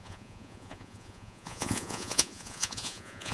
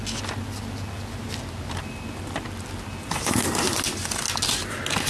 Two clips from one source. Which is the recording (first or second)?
second